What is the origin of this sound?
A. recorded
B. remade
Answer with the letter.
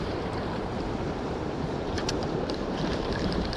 B